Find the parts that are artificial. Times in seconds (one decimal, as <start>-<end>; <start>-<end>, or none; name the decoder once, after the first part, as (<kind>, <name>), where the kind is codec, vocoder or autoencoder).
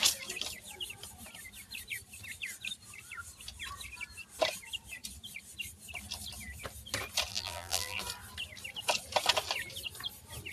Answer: 7.3-8.0 (vocoder, BigVGAN v2)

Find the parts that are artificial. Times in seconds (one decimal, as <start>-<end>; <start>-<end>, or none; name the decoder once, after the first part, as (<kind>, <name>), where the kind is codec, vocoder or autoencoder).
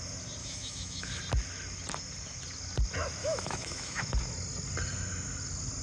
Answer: 0.4-1.2 (autoencoder, DAC-VAE); 3.2-4.0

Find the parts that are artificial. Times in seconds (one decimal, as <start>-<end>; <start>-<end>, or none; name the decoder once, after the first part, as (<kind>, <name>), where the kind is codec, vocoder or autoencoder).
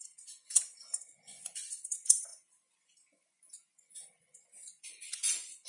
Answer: 0.0-5.7 (vocoder, Vocos)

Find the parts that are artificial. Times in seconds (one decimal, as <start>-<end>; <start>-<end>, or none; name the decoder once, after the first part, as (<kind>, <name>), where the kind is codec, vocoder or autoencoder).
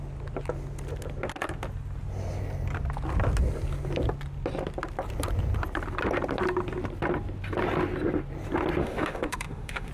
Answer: 8.8-9.9 (autoencoder, DAC-VAE)